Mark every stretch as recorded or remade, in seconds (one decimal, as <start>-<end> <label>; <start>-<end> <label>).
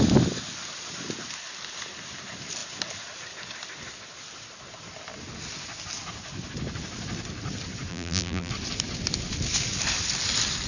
0.0-7.9 recorded; 7.9-8.5 remade; 8.5-10.7 recorded